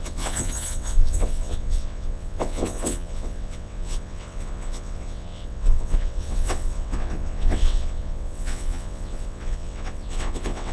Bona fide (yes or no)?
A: no